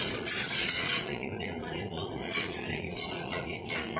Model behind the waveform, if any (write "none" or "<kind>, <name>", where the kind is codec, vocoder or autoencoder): vocoder, Vocos